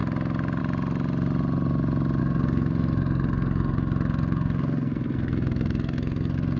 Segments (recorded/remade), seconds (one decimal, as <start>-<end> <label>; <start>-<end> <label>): 0.0-2.2 recorded; 2.2-6.6 remade